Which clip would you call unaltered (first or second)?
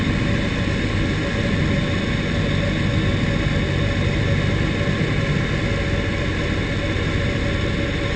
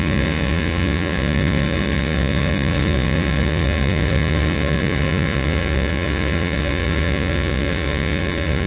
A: first